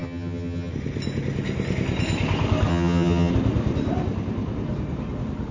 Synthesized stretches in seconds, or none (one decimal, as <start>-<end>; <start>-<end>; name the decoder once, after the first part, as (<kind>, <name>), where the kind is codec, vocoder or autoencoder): 0.0-0.7 (vocoder, HiFi-GAN); 2.7-3.3